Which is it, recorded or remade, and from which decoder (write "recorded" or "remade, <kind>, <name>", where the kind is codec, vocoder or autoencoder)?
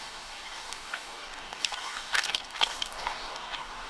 remade, codec, DAC